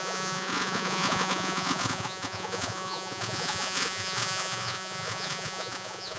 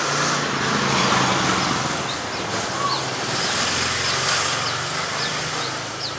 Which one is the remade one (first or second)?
first